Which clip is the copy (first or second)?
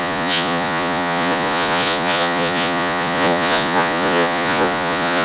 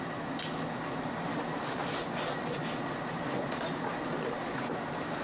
first